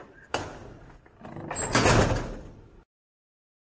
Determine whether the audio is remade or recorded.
recorded